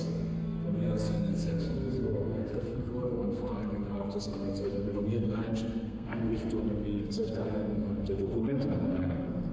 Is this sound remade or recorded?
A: remade